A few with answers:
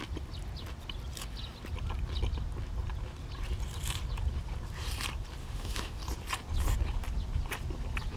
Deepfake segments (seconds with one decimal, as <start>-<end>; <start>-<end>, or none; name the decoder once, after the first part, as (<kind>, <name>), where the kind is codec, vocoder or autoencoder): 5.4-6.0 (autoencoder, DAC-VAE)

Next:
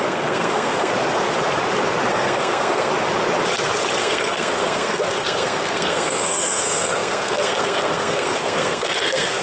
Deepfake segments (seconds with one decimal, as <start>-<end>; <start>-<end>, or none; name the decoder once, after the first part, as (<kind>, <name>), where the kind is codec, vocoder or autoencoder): 0.0-0.9 (codec, SNAC); 2.1-2.9; 4.0-9.4

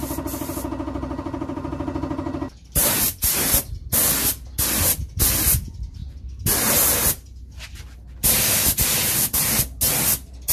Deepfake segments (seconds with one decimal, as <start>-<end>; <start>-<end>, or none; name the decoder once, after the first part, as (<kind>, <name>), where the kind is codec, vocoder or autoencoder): 2.6-3.9 (vocoder, BigVGAN v2)

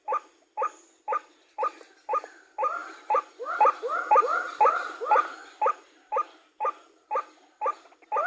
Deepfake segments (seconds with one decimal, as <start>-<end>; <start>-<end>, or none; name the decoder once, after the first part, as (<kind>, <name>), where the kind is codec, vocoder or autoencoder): 2.8-6.4 (vocoder, BigVGAN v2)

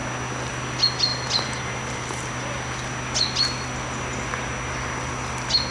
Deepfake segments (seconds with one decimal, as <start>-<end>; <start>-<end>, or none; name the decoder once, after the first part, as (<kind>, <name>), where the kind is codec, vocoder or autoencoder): none

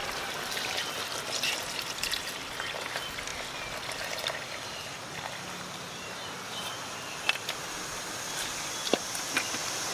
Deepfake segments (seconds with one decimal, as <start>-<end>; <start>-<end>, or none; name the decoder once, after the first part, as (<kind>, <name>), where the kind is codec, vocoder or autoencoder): 0.0-0.8 (vocoder, BigVGAN v2)

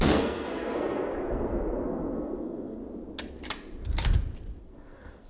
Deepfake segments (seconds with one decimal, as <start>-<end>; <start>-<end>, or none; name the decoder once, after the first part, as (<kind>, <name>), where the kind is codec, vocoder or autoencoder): 0.0-2.8 (codec, SNAC); 4.6-5.3

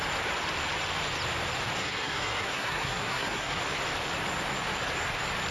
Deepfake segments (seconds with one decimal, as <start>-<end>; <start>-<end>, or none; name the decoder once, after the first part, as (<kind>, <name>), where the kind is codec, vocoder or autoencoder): 1.8-3.6 (codec, SNAC)